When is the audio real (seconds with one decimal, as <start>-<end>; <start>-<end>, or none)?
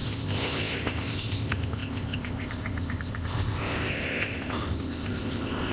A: none